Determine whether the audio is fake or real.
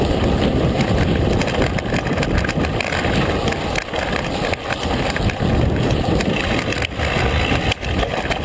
real